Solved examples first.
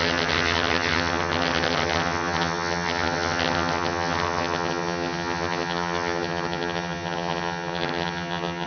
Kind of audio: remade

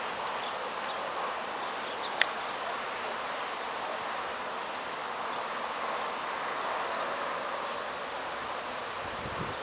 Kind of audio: recorded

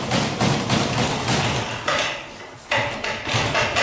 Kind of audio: recorded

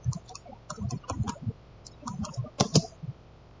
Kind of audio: recorded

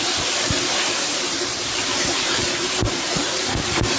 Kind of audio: remade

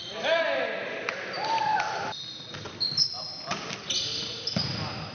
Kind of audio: recorded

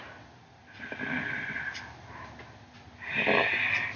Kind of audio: recorded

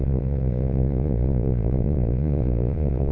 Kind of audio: remade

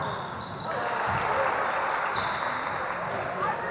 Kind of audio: recorded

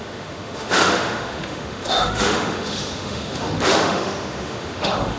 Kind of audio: remade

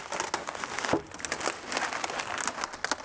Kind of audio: recorded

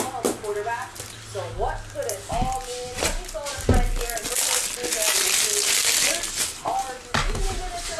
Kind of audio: recorded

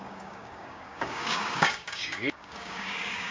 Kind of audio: remade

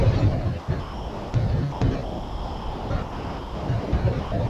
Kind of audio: recorded